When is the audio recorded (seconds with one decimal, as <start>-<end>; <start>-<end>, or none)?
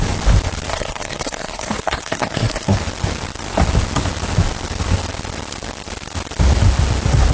0.0-0.7; 2.8-7.3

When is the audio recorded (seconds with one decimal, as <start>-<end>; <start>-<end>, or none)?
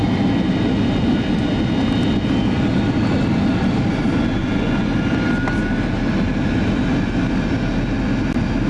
0.0-4.4; 4.9-8.7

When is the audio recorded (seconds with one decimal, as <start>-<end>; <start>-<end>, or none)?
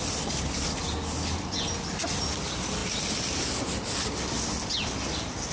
0.0-5.5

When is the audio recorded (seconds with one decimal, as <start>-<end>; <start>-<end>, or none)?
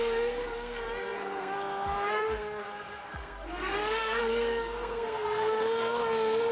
none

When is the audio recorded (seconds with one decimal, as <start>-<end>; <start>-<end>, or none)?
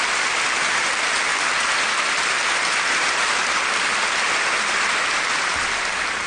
0.0-6.3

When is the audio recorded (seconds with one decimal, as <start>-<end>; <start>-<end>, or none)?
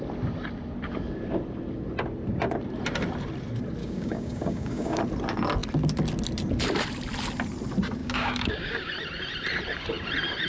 0.0-3.8; 5.0-8.0; 8.9-10.5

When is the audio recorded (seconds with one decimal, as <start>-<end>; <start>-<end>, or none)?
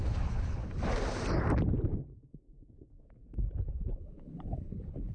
0.6-3.6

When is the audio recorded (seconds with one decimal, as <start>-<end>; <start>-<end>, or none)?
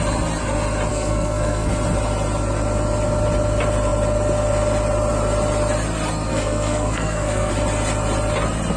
0.0-0.9; 1.7-6.3; 7.5-8.8